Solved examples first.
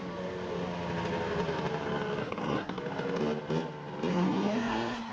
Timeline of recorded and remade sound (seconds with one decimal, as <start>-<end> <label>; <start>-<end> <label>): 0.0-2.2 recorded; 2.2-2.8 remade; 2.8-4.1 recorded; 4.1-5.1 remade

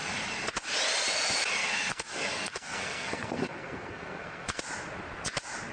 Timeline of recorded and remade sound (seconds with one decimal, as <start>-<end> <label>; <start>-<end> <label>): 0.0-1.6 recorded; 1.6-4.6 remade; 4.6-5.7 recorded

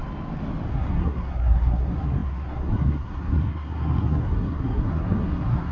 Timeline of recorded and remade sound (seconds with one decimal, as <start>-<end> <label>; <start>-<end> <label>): 0.0-0.7 recorded; 0.7-5.7 remade